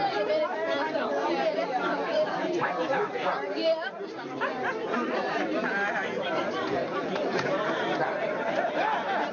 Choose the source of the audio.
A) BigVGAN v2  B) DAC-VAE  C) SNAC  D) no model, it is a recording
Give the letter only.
A